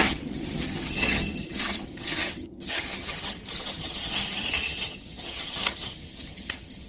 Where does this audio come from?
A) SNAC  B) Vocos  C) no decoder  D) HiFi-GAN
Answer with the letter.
D